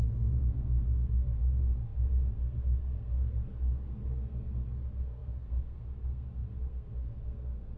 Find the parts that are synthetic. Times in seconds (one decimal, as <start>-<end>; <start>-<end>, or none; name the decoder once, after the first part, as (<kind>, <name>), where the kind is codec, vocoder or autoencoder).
0.0-7.8 (codec, SNAC)